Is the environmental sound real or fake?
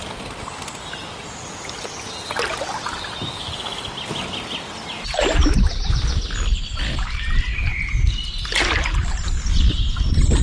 real